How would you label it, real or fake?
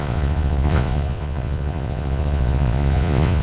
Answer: fake